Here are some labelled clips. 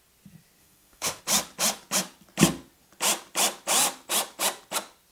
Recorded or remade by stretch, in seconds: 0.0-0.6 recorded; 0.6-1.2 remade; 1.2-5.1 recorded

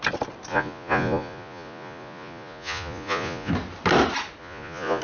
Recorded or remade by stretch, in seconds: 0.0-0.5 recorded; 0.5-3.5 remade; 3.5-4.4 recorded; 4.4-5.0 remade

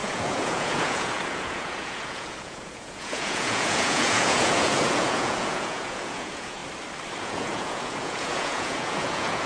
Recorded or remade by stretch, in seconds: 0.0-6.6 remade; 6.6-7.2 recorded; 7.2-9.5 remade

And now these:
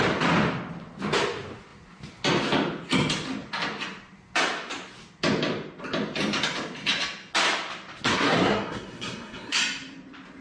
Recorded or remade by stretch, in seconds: 0.0-8.1 recorded; 8.1-9.6 remade; 9.6-10.4 recorded

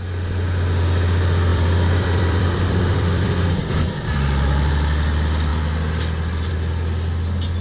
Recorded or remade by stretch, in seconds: 0.0-1.5 recorded; 1.5-4.7 remade; 4.7-7.6 recorded

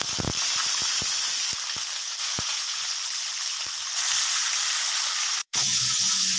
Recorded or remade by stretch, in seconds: 0.0-2.0 recorded; 2.0-2.9 remade; 2.9-5.4 recorded; 5.4-6.4 remade